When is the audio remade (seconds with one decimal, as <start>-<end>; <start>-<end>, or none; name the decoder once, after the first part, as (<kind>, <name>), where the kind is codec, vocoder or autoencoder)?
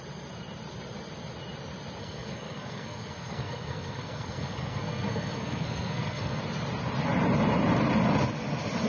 2.0-6.4 (codec, SNAC)